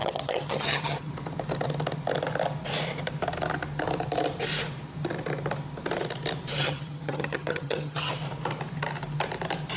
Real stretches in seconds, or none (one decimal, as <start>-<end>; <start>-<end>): 1.1-6.6; 8.1-9.8